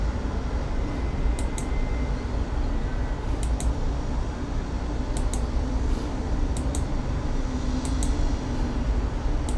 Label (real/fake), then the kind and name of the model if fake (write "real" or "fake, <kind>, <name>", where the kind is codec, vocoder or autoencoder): real